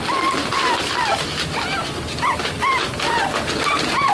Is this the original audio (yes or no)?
yes